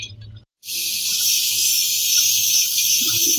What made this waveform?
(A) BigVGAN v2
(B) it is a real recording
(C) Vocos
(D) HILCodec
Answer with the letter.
A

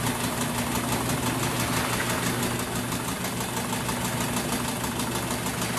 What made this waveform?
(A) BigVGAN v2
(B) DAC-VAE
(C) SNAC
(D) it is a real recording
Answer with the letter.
D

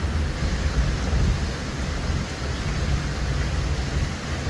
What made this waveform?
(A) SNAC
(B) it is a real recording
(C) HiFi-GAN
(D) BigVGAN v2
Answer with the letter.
B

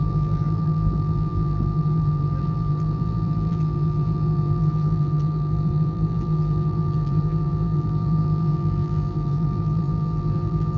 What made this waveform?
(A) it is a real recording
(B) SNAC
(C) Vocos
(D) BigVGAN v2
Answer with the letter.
D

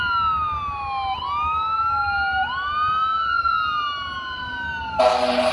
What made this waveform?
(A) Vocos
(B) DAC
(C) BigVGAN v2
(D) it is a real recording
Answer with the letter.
D